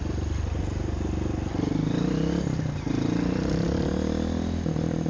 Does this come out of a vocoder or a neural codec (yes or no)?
no